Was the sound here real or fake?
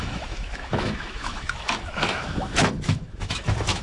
fake